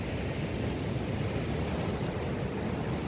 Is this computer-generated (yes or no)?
no